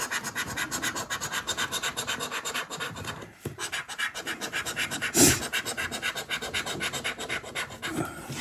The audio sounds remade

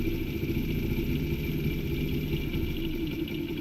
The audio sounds recorded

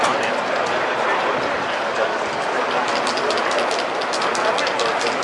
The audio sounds recorded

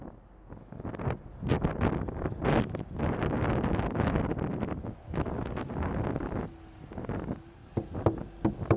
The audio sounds recorded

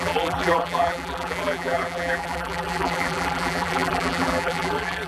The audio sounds remade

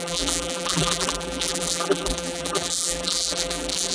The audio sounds remade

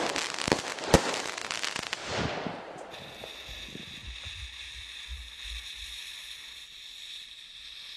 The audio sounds recorded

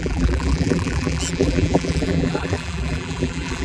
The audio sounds remade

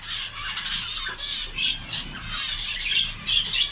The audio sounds recorded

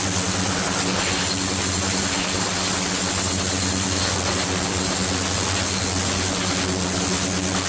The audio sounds recorded